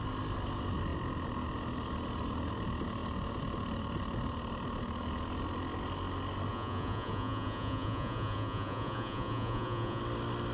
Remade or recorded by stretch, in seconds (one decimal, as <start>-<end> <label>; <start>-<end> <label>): 0.0-6.5 recorded; 6.5-10.0 remade; 10.0-10.5 recorded